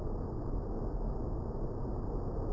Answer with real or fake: real